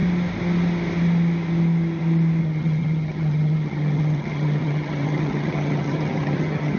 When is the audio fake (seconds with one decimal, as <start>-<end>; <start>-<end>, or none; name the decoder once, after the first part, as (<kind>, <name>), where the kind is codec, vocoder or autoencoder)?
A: 2.4-6.8 (vocoder, HiFi-GAN)